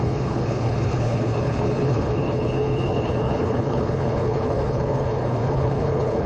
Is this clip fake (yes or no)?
yes